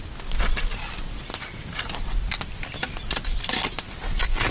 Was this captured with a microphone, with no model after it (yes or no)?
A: yes